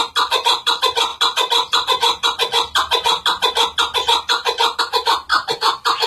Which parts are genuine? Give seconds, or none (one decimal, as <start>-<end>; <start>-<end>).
0.0-6.1